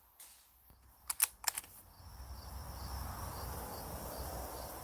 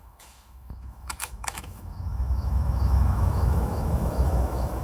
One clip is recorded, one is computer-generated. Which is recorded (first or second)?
first